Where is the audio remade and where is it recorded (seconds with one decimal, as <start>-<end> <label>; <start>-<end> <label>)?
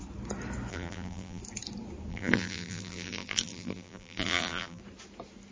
0.0-0.7 recorded; 0.7-1.4 remade; 1.4-2.1 recorded; 2.1-4.8 remade; 4.8-5.5 recorded